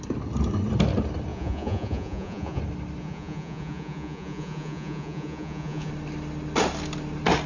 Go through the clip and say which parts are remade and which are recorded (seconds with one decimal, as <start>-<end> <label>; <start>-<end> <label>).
0.0-1.3 recorded; 1.3-2.6 remade; 2.6-3.0 recorded; 3.0-5.9 remade; 5.9-7.5 recorded